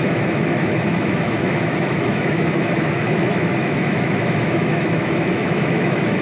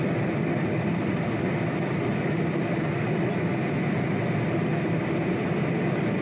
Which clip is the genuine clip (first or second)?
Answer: second